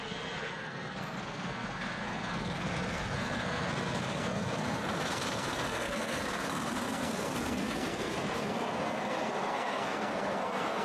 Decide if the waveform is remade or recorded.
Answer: remade